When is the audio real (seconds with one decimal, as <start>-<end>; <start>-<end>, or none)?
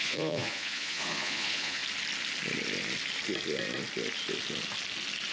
1.8-5.3